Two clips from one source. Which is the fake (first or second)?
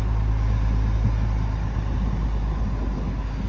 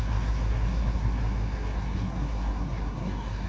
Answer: second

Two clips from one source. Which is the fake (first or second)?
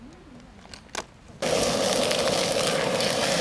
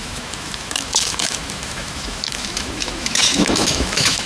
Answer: second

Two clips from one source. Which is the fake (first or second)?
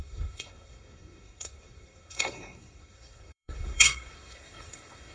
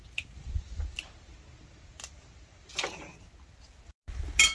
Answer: first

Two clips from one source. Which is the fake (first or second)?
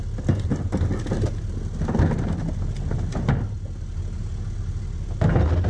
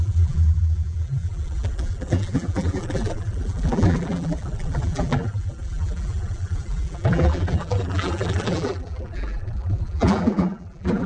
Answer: second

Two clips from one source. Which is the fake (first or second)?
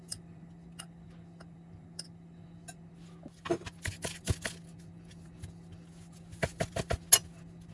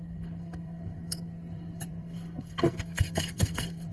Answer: second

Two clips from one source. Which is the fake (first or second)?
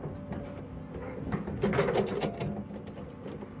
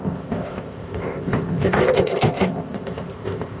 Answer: second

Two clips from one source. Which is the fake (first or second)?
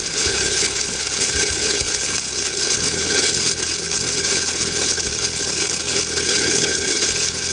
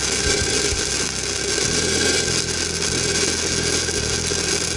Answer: first